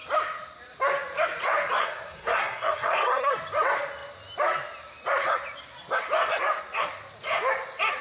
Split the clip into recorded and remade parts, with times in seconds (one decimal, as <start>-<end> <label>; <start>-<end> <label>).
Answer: 0.0-1.8 recorded; 1.8-3.3 remade; 3.3-8.0 recorded